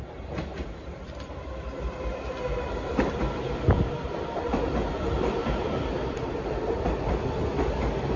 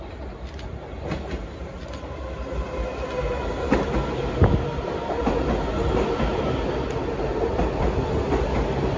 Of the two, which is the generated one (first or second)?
first